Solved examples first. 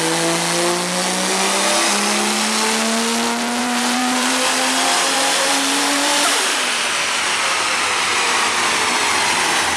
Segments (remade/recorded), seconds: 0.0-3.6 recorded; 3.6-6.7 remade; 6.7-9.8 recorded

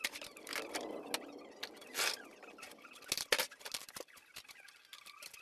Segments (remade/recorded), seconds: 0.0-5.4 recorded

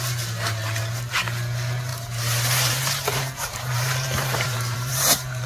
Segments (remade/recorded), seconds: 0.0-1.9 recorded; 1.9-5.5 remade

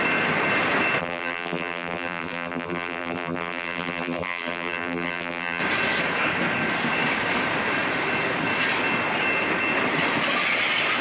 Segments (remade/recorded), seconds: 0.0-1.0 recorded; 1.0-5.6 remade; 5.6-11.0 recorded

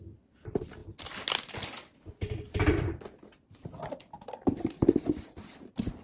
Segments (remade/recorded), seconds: 0.0-0.8 remade; 0.8-4.1 recorded; 4.1-6.0 remade

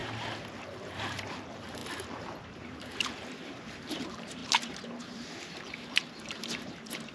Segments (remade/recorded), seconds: 0.0-0.6 recorded; 0.6-1.8 remade; 1.8-2.6 recorded; 2.6-4.4 remade; 4.4-5.0 recorded; 5.0-7.1 remade